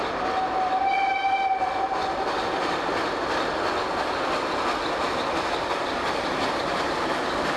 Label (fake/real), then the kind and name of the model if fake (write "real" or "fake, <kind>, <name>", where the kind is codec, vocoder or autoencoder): real